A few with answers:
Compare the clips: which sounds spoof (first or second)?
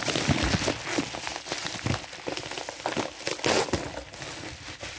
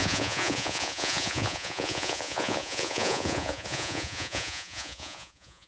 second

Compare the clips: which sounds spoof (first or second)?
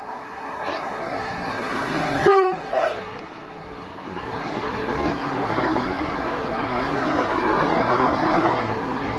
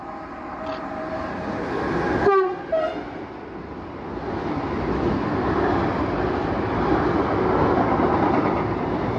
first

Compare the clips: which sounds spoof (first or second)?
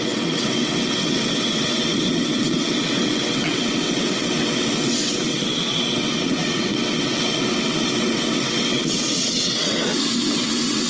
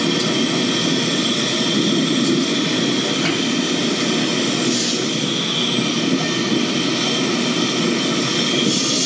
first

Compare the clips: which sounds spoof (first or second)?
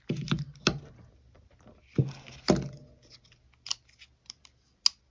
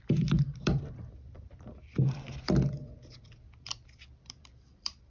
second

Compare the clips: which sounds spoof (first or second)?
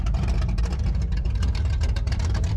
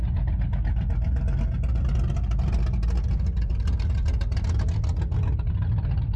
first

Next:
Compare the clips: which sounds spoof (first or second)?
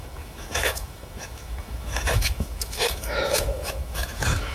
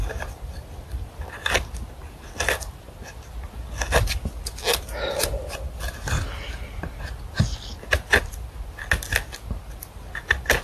first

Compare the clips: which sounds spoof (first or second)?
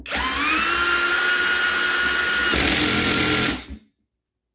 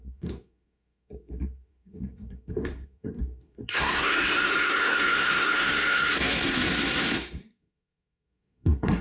second